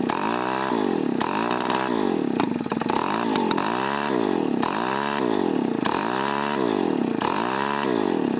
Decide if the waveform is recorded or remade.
recorded